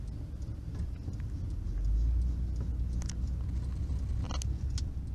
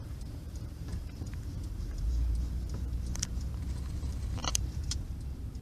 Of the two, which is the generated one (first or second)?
second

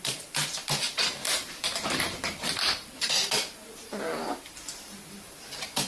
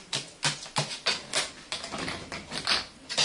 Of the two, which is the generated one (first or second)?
first